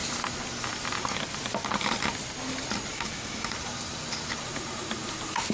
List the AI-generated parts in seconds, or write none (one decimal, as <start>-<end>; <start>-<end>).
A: 2.9-3.5

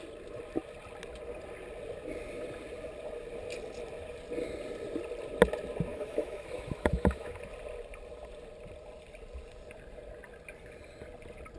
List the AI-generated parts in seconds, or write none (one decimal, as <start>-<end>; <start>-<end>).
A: 5.9-7.4

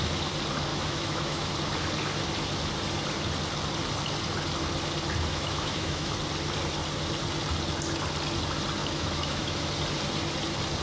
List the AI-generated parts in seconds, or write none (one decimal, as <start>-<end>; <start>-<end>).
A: 0.7-1.5; 5.3-6.1; 8.8-9.7

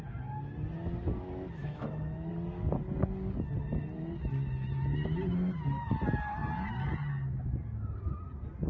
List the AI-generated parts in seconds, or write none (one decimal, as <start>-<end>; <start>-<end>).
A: 1.6-2.3

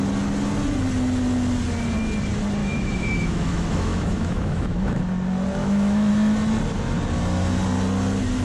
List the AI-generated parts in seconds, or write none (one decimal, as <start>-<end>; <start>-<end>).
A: 2.6-5.0; 5.6-6.1

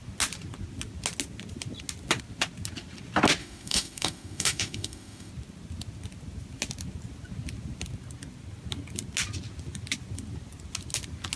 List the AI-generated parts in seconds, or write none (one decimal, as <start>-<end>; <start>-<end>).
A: 3.4-5.3